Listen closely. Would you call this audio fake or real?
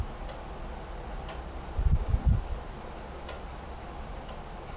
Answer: real